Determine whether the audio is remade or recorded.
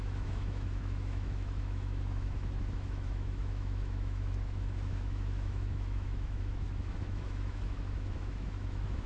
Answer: remade